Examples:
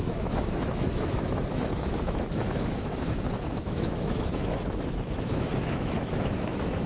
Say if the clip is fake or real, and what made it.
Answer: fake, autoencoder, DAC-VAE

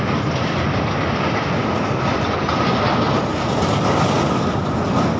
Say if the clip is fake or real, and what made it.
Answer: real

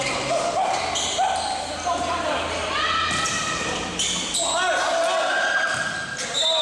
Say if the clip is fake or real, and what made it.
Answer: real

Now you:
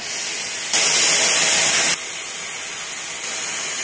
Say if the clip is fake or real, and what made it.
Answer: real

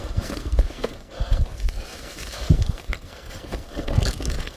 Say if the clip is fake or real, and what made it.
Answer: fake, codec, SNAC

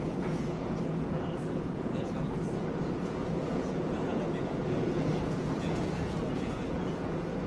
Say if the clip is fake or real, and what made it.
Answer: fake, vocoder, Vocos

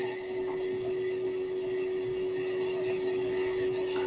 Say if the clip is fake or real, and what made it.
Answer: real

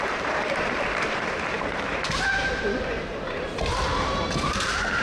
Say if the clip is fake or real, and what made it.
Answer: fake, vocoder, BigVGAN v2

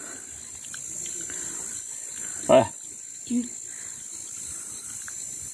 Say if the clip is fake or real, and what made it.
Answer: real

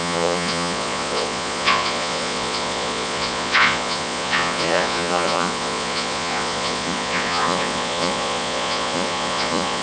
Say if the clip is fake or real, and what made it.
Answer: fake, vocoder, Vocos